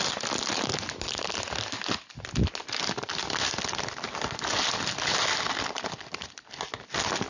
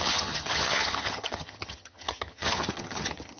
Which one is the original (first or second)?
first